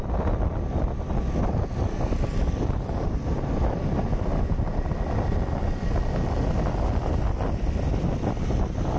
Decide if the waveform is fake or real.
real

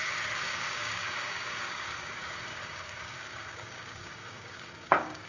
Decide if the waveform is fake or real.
fake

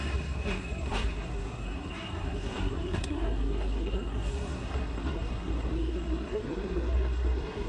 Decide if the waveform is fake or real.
fake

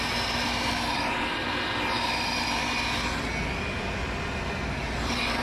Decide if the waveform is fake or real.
real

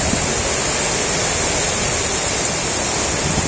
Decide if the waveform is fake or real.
real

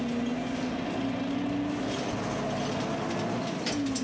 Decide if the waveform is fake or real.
real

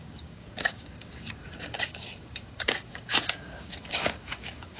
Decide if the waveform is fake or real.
fake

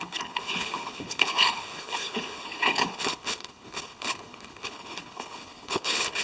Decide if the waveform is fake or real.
fake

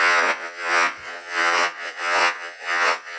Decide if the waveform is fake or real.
fake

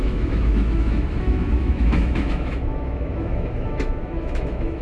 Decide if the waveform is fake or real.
fake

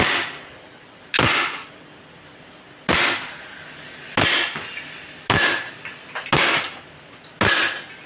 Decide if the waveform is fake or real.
real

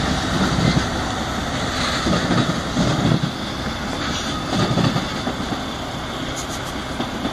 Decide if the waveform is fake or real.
real